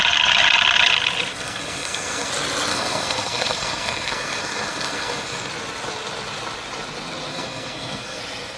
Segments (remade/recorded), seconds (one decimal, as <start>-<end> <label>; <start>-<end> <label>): 0.0-1.3 recorded; 1.3-2.3 remade; 2.3-2.7 recorded; 2.7-5.5 remade; 5.5-7.3 recorded; 7.3-8.2 remade; 8.2-8.6 recorded